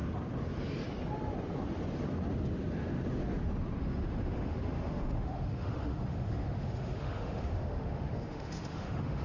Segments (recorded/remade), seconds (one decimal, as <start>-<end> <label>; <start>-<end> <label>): 0.0-3.8 recorded; 3.8-9.2 remade